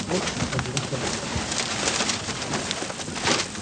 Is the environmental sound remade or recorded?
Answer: recorded